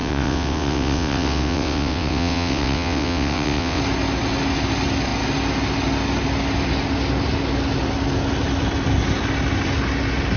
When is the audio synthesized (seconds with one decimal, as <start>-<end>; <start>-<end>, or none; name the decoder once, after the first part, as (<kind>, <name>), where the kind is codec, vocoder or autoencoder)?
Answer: 0.0-3.8 (vocoder, WaveNeXt)